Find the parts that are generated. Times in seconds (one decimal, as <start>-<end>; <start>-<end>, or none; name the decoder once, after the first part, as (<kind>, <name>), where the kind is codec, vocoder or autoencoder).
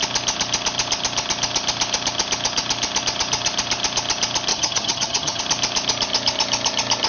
4.5-5.4 (vocoder, HiFi-GAN)